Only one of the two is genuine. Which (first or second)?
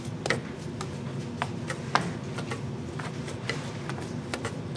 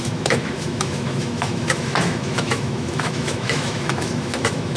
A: first